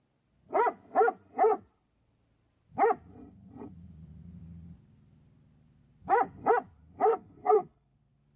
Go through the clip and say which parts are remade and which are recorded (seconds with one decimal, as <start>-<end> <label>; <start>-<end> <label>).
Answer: 0.0-7.1 recorded; 7.1-7.9 remade; 7.9-8.4 recorded